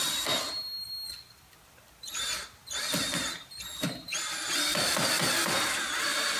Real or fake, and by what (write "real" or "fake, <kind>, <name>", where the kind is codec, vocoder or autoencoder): real